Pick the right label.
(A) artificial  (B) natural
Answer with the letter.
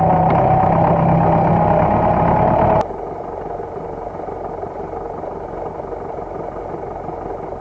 B